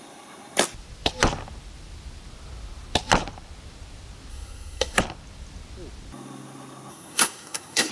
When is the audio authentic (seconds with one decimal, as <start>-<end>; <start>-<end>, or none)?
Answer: 0.0-4.3; 5.0-6.9